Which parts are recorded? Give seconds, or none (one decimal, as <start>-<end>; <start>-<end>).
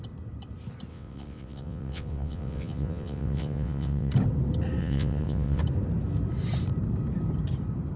0.0-0.9; 4.1-4.8; 5.6-8.0